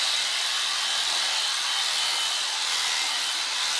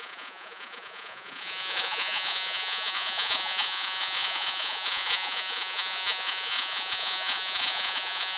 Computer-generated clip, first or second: second